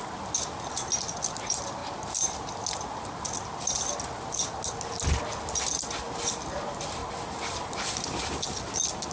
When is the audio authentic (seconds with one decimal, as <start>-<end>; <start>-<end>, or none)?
0.0-9.1